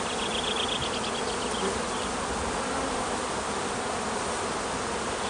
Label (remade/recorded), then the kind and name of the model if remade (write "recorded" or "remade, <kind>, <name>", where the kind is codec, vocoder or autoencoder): recorded